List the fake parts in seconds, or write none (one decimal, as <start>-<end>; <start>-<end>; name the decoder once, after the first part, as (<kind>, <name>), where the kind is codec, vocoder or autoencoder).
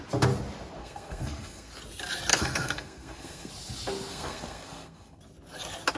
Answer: 0.8-1.7 (codec, SNAC); 2.3-3.5; 4.1-5.2